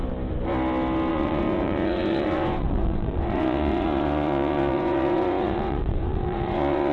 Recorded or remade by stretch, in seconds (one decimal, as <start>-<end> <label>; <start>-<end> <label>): 0.0-1.1 recorded; 1.1-6.9 remade